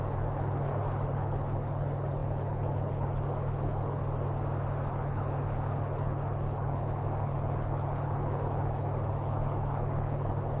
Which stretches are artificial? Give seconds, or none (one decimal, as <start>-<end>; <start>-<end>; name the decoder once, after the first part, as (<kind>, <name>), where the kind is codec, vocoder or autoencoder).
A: 0.0-4.0 (codec, HILCodec); 4.9-10.6